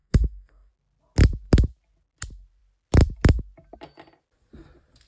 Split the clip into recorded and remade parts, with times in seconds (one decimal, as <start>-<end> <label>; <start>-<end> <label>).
0.0-0.7 remade; 0.7-5.1 recorded